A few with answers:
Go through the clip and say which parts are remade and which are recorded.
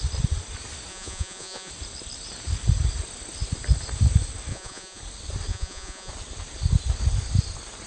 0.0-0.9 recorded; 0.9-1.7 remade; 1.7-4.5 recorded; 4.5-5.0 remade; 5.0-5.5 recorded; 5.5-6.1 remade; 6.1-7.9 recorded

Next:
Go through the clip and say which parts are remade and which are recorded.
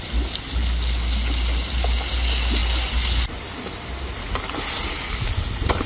0.0-5.9 recorded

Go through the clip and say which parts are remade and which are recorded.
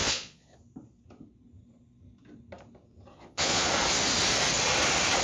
0.0-0.6 remade; 0.6-3.1 recorded; 3.1-3.7 remade; 3.7-5.2 recorded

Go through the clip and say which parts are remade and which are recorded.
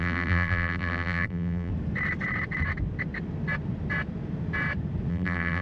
0.0-1.7 remade; 1.7-5.1 recorded; 5.1-5.6 remade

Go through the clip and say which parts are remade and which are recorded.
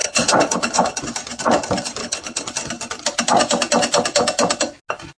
0.0-1.0 remade; 1.0-2.0 recorded; 2.0-2.5 remade; 2.5-5.2 recorded